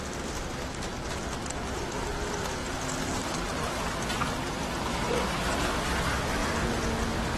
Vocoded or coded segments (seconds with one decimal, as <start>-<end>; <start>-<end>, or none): 2.6-3.7

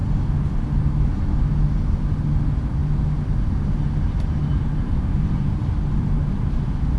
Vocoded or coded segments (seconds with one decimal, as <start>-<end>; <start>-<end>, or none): 2.8-3.7; 4.4-5.7

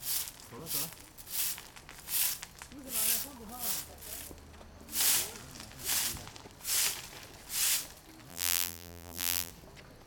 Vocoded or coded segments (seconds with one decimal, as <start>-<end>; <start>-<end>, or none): 8.3-9.5

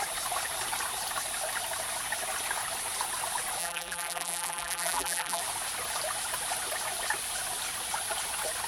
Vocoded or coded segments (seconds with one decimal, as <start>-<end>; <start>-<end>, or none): 3.6-5.4